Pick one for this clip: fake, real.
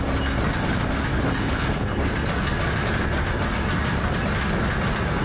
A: real